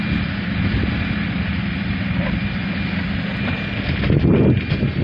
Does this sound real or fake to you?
real